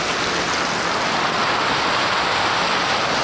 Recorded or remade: recorded